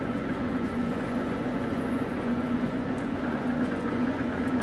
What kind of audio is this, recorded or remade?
remade